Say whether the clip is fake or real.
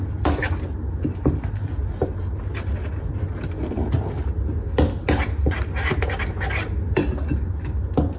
real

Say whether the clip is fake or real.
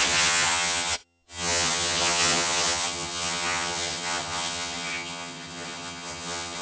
fake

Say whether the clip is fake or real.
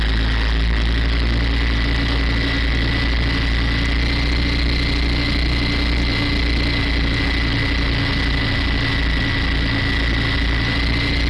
real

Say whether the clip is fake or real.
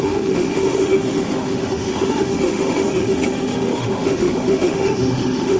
fake